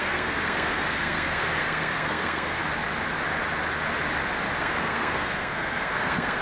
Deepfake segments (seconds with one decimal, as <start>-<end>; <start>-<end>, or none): 0.0-2.6; 4.6-6.4

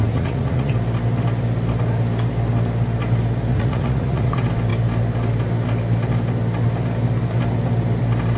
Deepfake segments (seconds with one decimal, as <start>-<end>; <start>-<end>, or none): 0.0-0.7; 3.5-4.3

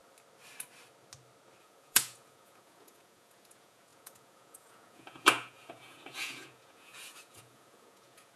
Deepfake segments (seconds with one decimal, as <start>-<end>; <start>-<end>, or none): 1.6-8.4

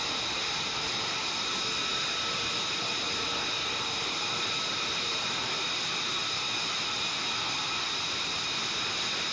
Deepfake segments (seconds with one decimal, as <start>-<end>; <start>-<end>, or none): none

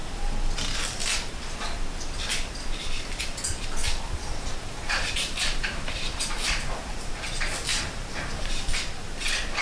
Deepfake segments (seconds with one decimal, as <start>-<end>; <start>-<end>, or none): 3.8-7.1; 7.7-8.7

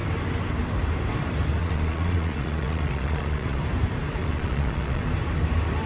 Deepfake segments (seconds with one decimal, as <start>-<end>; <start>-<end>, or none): 1.6-3.6; 4.2-5.0

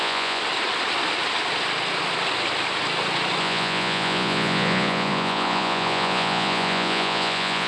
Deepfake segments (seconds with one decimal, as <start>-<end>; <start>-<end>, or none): 0.0-0.4; 3.4-7.7